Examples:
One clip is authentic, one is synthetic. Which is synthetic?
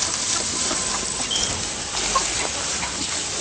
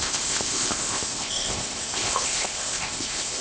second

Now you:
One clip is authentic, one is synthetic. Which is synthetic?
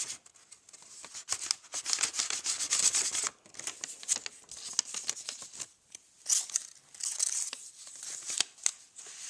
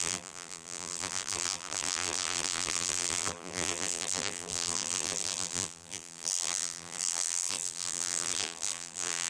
second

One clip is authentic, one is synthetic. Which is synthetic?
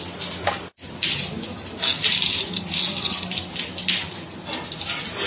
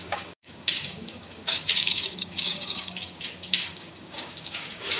second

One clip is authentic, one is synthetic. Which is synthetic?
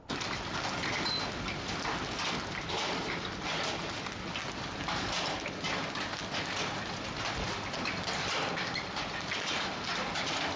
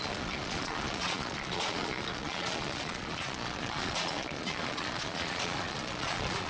second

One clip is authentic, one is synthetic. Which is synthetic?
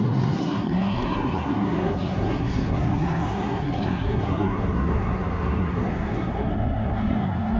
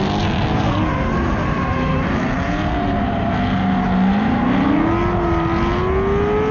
first